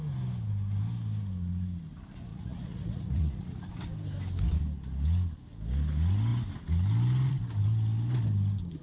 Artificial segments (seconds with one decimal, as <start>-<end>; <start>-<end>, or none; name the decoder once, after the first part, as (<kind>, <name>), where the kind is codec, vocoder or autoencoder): 2.3-3.7 (vocoder, Vocos)